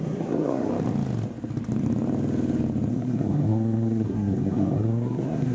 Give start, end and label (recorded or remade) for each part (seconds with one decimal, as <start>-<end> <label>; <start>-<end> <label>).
0.0-0.7 remade; 0.7-2.9 recorded; 2.9-5.5 remade